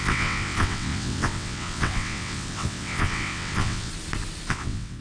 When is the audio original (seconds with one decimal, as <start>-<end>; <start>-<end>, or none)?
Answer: 3.9-4.5